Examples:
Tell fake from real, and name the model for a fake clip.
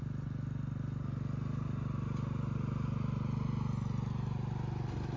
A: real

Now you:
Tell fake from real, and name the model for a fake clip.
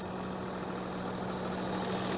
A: real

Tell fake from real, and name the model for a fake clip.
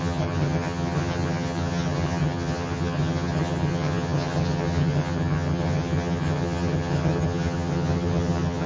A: fake, vocoder, HiFi-GAN